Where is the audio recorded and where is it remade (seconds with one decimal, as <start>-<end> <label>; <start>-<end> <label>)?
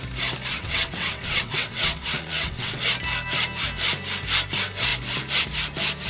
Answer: 0.0-0.5 recorded; 0.5-2.8 remade; 2.8-6.1 recorded